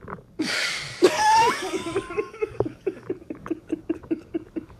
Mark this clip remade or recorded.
remade